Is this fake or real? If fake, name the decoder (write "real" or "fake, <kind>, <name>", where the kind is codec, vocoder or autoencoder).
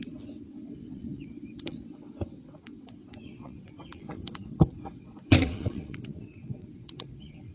fake, vocoder, WaveNeXt